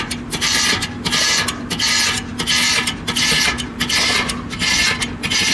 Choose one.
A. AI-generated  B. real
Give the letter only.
B